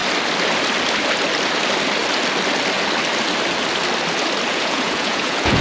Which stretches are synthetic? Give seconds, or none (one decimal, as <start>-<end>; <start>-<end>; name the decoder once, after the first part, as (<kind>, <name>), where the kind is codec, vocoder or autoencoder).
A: 4.5-5.6 (vocoder, Vocos)